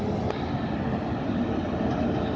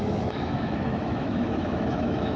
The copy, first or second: second